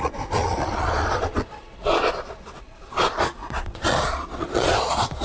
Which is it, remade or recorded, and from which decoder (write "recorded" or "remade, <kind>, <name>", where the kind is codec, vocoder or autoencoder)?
remade, vocoder, Vocos